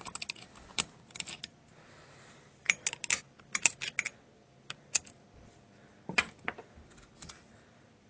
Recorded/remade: recorded